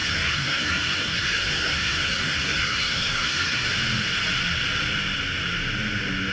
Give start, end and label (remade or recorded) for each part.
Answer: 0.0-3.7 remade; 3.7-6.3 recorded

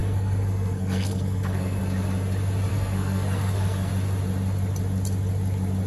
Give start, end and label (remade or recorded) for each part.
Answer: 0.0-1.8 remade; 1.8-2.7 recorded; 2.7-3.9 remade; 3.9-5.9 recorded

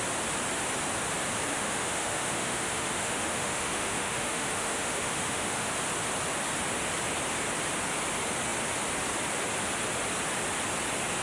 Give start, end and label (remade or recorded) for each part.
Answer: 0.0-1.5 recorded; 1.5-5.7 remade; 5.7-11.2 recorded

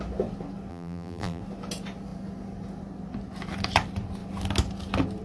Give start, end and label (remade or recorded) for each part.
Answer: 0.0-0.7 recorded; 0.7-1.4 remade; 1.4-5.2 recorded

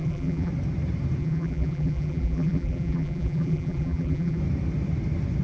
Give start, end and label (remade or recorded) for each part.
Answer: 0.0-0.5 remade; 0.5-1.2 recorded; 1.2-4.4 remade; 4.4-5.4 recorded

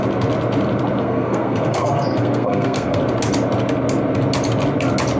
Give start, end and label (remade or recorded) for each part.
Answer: 0.0-1.0 recorded; 1.0-3.0 remade; 3.0-5.2 recorded